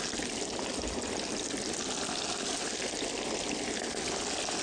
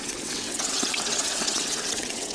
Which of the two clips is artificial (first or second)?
second